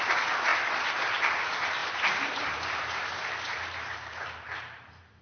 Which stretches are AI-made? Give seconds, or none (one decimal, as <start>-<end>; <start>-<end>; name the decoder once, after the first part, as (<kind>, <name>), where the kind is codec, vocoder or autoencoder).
1.8-5.2 (vocoder, BigVGAN v2)

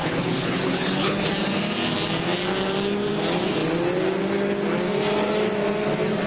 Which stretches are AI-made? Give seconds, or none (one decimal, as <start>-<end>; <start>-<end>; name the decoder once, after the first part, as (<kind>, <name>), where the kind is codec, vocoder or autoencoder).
0.0-1.3 (codec, HILCodec)

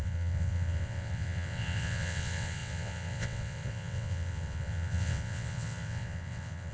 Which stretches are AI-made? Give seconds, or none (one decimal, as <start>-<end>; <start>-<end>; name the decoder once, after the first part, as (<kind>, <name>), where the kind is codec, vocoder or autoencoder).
0.0-6.7 (vocoder, WaveNeXt)

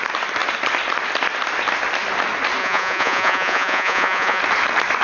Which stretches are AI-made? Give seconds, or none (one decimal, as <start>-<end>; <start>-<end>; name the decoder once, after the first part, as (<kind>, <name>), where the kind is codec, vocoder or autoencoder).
2.6-4.4 (vocoder, Vocos)